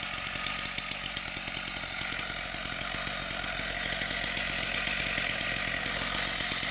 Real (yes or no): yes